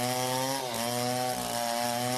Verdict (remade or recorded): recorded